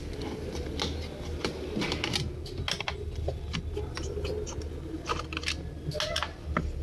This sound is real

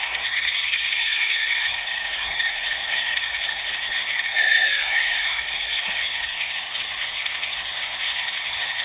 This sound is fake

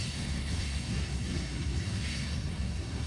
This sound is fake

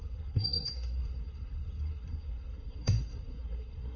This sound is fake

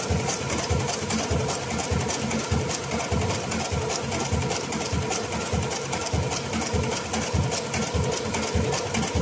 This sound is real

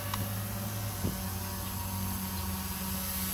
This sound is real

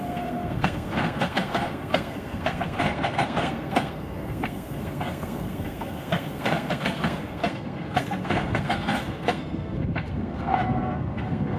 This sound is fake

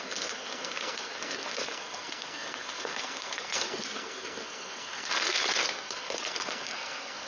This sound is fake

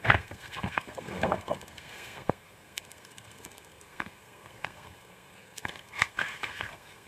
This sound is fake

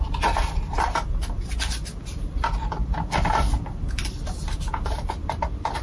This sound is real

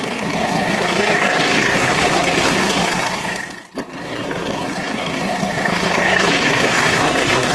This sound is fake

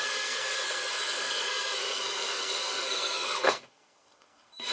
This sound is fake